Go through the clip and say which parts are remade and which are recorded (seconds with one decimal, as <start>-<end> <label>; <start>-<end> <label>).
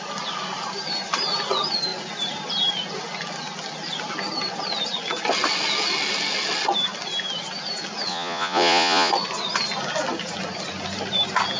0.0-8.1 recorded; 8.1-9.1 remade; 9.1-11.6 recorded